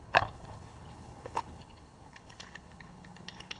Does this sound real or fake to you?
fake